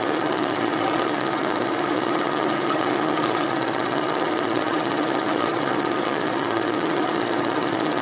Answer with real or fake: fake